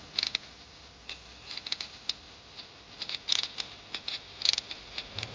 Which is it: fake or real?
real